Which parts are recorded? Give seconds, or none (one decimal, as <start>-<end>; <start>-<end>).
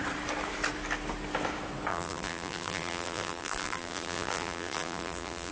0.0-1.9